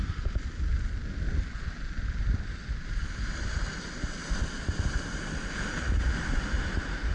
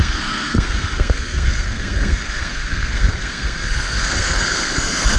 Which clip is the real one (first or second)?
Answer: first